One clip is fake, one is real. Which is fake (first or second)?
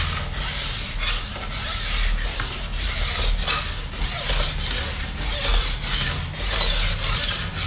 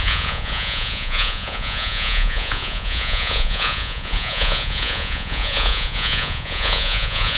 second